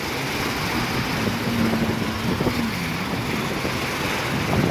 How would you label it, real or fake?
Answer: real